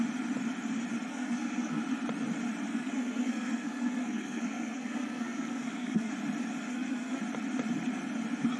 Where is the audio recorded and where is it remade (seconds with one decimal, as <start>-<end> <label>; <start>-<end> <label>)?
0.0-1.1 recorded; 1.1-1.8 remade; 1.8-2.7 recorded; 2.7-6.1 remade; 6.1-6.7 recorded; 6.7-7.2 remade; 7.2-8.6 recorded